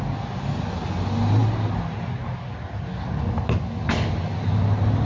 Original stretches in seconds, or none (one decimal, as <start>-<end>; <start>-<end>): 0.0-5.0